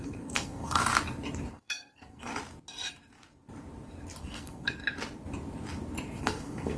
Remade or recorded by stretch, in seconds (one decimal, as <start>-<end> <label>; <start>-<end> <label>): 0.0-0.8 remade; 0.8-1.5 recorded; 1.5-2.3 remade; 2.3-4.2 recorded; 4.2-4.8 remade; 4.8-6.2 recorded; 6.2-6.8 remade